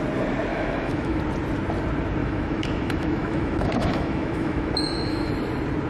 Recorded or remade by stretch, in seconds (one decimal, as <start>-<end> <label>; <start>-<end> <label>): 0.0-0.5 recorded; 0.5-1.2 remade; 1.2-2.2 recorded; 2.2-5.3 remade; 5.3-5.9 recorded